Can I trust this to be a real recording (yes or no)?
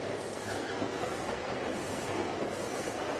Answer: no